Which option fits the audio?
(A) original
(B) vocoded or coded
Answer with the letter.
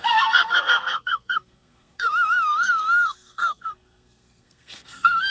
B